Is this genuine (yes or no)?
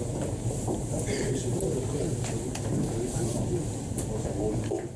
yes